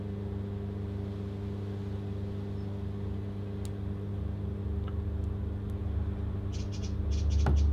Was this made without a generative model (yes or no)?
yes